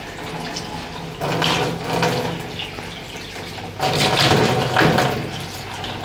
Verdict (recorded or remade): recorded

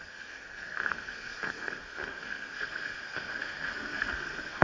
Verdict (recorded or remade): remade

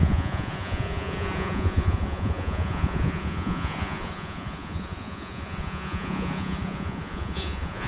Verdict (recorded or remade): remade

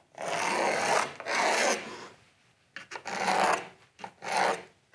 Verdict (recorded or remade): recorded